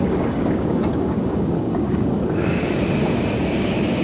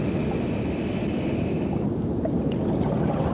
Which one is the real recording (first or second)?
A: second